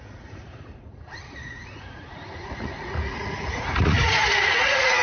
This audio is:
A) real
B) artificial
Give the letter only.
B